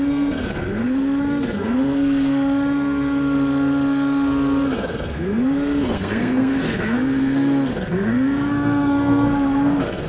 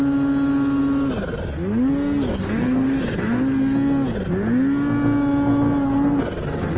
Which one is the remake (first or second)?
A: first